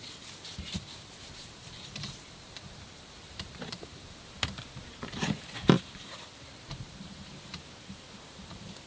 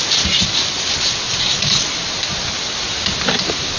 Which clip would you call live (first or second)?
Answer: second